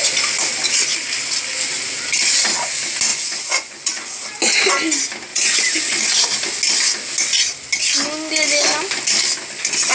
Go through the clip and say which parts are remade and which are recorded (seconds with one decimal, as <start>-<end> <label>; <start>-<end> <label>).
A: 0.0-3.1 recorded; 3.1-4.2 remade; 4.2-5.3 recorded; 5.3-6.0 remade; 6.0-9.9 recorded